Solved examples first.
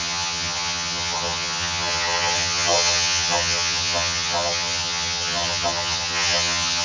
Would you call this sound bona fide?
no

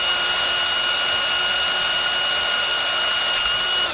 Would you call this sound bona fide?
yes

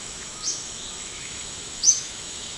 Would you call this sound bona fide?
no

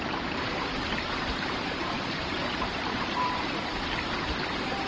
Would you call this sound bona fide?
no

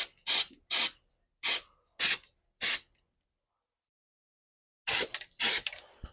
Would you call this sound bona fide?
yes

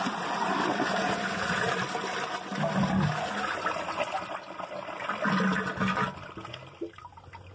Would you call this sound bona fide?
yes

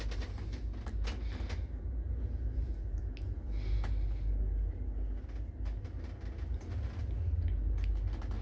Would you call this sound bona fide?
yes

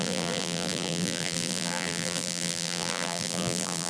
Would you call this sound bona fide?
no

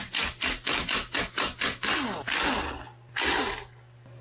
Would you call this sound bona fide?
yes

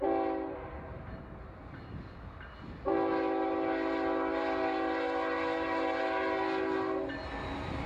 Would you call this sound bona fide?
yes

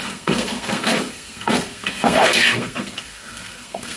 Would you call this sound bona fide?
no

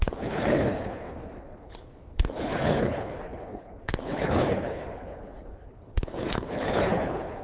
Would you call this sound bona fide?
no